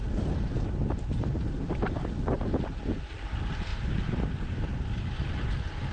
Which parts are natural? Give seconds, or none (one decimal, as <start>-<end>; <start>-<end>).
0.0-5.9

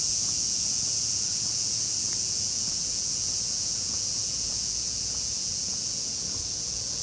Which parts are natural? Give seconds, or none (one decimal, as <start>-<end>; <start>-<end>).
none

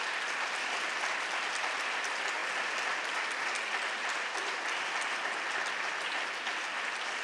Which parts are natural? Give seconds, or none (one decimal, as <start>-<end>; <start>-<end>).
0.0-7.2

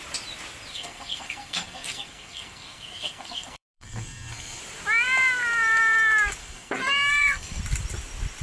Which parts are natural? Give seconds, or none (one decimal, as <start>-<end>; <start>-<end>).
0.0-0.7; 4.6-6.4; 7.6-8.4

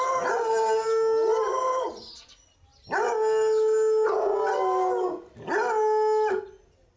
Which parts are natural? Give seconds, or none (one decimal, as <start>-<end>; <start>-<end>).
0.0-1.3; 2.3-7.0

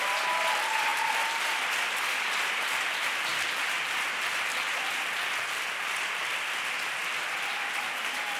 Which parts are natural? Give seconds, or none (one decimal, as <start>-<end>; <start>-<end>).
0.0-0.9; 1.6-8.4

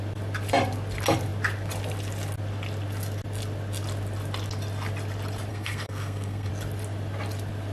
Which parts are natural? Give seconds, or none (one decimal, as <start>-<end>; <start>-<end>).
0.0-5.5; 6.5-7.7

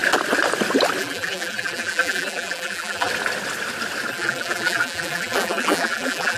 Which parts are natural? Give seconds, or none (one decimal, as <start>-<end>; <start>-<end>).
0.0-1.0; 3.1-4.1